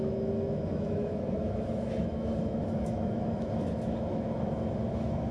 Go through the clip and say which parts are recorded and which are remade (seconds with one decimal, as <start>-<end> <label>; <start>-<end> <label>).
0.0-5.3 remade